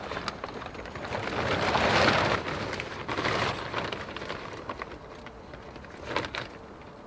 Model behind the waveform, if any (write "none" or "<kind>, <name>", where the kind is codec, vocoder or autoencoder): none